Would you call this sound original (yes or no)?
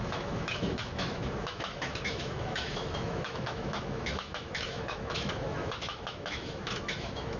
no